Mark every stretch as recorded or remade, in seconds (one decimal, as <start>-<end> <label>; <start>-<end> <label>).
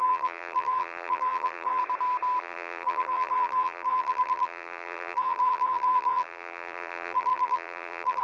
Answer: 0.0-1.8 remade; 1.8-2.4 recorded; 2.4-8.2 remade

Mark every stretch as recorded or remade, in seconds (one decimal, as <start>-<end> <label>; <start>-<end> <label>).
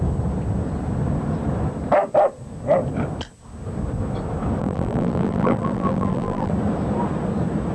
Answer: 0.0-4.6 recorded; 4.6-6.5 remade; 6.5-7.7 recorded